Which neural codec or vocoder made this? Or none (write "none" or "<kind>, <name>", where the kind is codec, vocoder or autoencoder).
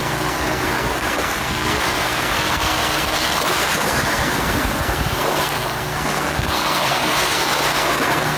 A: codec, SNAC